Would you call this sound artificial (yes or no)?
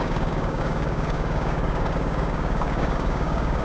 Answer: yes